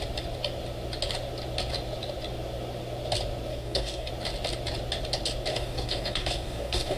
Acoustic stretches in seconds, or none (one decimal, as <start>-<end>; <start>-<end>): 0.0-3.5; 4.1-5.5